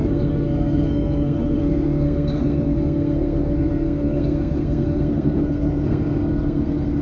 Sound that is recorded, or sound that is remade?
remade